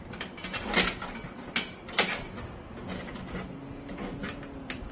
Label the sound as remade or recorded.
recorded